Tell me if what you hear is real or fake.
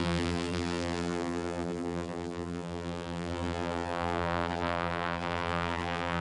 fake